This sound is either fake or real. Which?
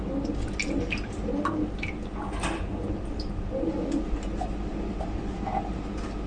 real